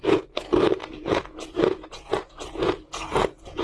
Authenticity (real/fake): fake